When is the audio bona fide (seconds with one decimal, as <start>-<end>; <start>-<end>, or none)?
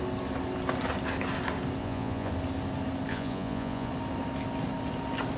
0.0-1.8; 2.3-3.1; 3.9-5.4